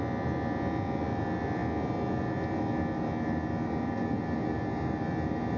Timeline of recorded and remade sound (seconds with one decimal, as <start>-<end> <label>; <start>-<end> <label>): 0.0-5.6 recorded